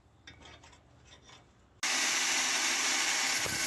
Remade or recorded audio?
recorded